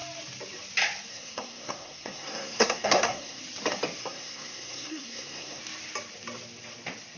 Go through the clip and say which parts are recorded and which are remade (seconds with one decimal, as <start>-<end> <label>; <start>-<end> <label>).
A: 0.0-1.1 recorded; 1.1-3.4 remade; 3.4-4.0 recorded; 4.0-5.6 remade; 5.6-7.2 recorded